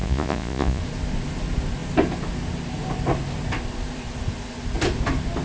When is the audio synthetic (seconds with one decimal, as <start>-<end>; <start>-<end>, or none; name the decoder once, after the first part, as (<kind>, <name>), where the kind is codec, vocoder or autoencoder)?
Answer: 0.0-0.8 (vocoder, Vocos)